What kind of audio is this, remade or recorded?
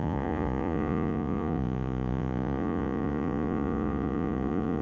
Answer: remade